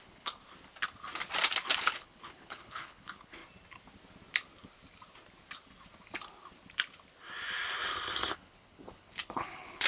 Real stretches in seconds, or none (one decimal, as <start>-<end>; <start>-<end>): 0.4-1.8; 3.4-8.3